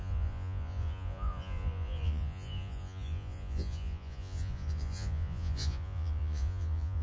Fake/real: fake